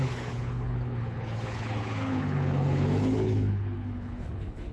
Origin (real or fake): fake